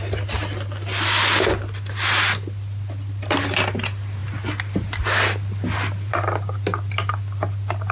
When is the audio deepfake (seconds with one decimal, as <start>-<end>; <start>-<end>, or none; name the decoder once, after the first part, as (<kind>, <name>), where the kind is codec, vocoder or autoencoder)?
none